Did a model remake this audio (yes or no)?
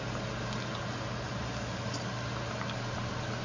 no